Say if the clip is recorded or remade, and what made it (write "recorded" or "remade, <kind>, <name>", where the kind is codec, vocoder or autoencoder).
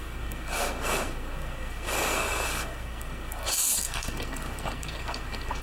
remade, codec, SNAC